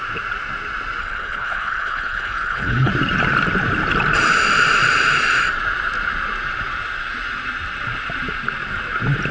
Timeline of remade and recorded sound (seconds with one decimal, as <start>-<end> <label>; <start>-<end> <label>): 0.0-1.0 recorded; 1.0-2.9 remade; 2.9-9.3 recorded